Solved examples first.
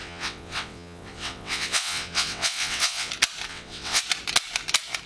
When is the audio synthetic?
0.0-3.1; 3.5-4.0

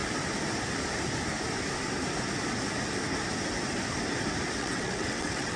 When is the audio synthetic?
4.6-5.6

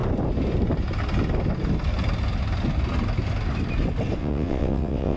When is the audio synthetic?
4.2-5.2

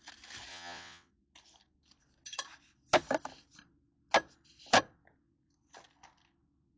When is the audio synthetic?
0.5-1.1

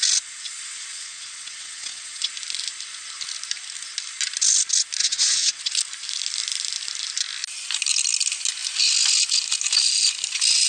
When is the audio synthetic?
0.9-2.2; 5.0-5.6

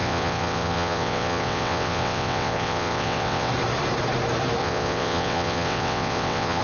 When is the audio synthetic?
0.0-3.5; 4.6-6.6

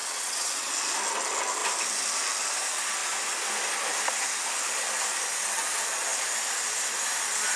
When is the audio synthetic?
0.0-0.7